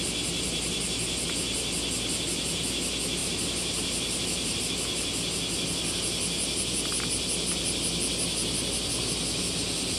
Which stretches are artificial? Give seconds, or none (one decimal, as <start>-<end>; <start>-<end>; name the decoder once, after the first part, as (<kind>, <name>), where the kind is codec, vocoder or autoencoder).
3.2-4.6 (vocoder, BigVGAN v2)

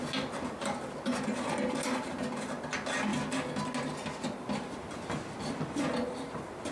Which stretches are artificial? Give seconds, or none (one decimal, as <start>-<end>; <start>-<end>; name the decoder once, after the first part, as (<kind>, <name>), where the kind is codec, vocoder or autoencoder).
none

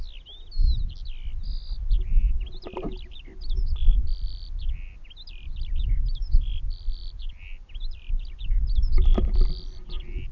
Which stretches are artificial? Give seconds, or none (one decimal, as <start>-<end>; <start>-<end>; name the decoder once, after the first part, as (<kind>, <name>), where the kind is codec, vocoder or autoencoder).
none

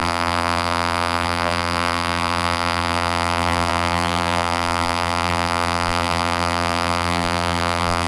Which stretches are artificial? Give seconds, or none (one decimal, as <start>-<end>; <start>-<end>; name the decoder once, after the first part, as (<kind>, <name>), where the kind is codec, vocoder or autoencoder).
0.0-8.1 (vocoder, BigVGAN v2)

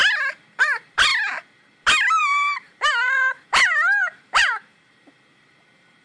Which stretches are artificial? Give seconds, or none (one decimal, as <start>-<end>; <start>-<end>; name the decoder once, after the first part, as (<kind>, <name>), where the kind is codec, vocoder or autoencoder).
0.6-1.1 (vocoder, BigVGAN v2); 2.2-6.0

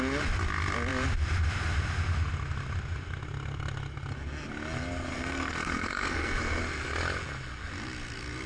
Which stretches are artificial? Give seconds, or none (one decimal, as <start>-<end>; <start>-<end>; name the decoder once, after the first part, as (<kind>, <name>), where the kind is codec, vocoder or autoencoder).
5.1-6.6 (codec, SNAC)

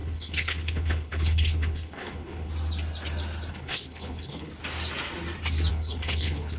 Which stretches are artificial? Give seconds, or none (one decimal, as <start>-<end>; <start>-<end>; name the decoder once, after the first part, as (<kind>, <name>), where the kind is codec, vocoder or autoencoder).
0.0-2.5 (codec, HILCodec); 3.5-4.5; 5.7-6.6